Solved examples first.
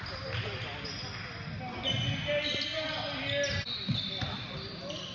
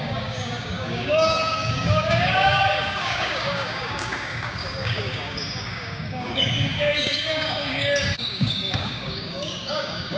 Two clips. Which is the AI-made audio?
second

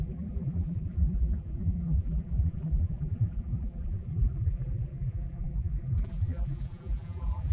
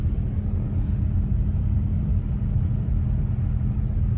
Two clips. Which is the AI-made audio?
first